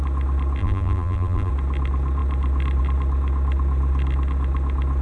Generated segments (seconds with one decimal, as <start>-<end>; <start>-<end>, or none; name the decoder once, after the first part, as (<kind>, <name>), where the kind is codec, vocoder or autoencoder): 0.6-1.5 (vocoder, BigVGAN v2)